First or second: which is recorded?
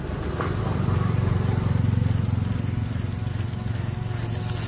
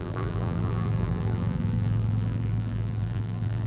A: first